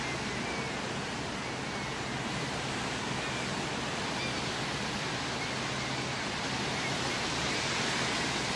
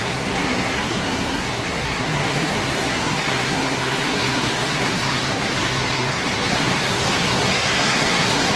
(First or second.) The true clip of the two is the first